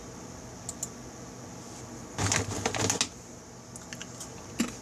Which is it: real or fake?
real